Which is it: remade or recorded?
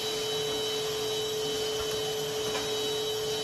recorded